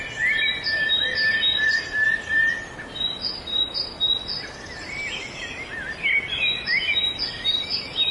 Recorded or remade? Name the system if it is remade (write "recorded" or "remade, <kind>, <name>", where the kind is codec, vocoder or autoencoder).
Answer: recorded